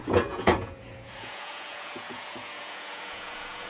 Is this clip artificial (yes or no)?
yes